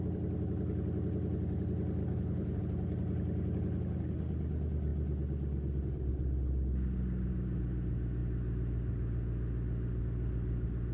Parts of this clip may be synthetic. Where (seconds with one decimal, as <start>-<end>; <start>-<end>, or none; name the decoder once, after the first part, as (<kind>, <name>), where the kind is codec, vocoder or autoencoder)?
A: 2.0-2.6 (codec, HILCodec)